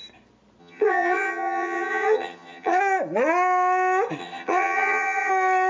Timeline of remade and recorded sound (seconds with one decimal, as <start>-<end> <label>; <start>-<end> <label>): 0.0-0.6 recorded; 0.6-2.8 remade; 2.8-4.2 recorded; 4.2-5.3 remade; 5.3-5.7 recorded